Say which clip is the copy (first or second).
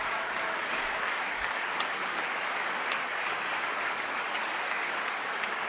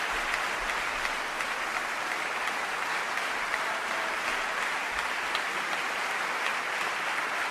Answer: first